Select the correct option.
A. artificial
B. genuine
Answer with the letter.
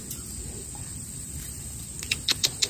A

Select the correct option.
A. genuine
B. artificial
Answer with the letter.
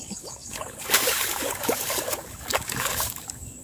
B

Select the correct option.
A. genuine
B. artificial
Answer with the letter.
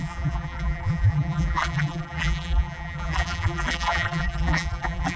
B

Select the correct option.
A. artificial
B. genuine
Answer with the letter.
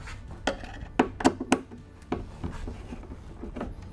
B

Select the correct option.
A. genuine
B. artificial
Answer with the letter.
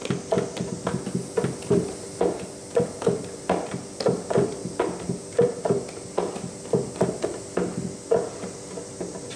A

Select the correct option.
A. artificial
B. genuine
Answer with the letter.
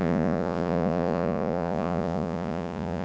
A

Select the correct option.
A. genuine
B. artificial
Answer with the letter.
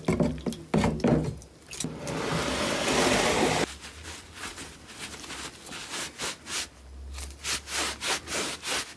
A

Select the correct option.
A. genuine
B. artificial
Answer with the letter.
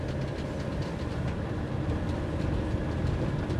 A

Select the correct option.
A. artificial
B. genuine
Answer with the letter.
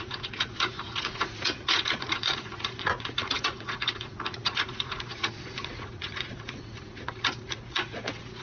A